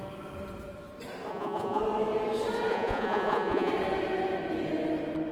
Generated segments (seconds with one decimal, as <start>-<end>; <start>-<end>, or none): 1.3-1.8; 2.7-3.7